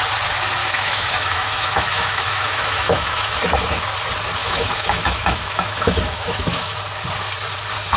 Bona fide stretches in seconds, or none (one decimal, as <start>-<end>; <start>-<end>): 0.0-0.6; 3.3-4.4; 6.8-8.0